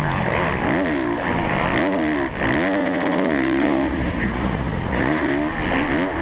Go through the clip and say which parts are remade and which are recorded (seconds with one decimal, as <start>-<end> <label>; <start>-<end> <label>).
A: 0.0-2.8 recorded; 2.8-5.3 remade; 5.3-6.2 recorded